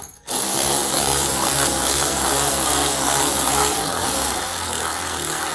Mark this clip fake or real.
fake